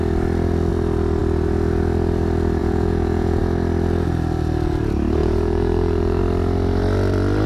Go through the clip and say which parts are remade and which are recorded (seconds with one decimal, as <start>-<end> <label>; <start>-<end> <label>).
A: 0.0-2.6 recorded; 2.6-3.4 remade; 3.4-5.2 recorded; 5.2-6.2 remade; 6.2-7.5 recorded

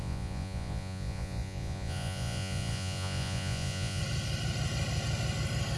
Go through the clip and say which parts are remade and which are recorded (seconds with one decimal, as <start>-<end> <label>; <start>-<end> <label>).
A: 0.0-4.0 remade; 4.0-5.8 recorded